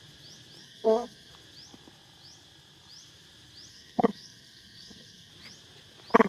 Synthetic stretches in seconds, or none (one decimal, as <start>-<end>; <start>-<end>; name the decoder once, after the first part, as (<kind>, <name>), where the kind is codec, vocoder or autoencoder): 0.6-1.3 (codec, SNAC); 3.7-5.3